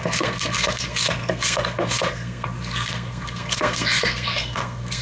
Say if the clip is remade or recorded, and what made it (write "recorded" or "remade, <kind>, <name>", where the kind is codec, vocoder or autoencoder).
remade, codec, SNAC